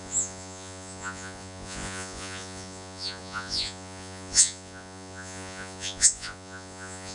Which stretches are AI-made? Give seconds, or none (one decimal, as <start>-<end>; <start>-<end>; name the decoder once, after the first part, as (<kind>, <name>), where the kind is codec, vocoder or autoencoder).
0.0-7.1 (vocoder, Vocos)